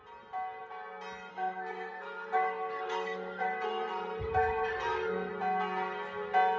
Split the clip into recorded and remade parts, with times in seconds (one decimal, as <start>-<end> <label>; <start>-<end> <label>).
0.0-1.3 recorded; 1.3-5.3 remade; 5.3-6.6 recorded